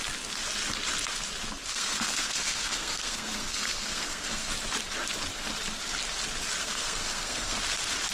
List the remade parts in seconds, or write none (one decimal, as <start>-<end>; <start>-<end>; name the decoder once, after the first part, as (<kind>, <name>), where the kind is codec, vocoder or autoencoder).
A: 1.7-4.5 (codec, SNAC); 6.6-7.6